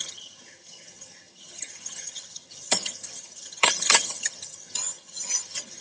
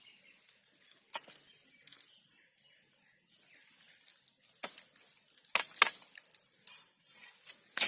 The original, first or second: second